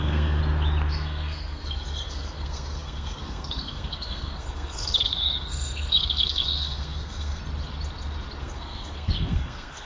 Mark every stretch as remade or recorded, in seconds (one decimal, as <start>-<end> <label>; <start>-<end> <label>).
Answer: 0.0-0.4 remade; 0.4-0.9 recorded; 0.9-7.4 remade; 7.4-8.4 recorded; 8.4-9.8 remade